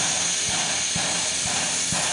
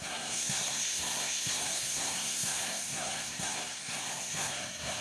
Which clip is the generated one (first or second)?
second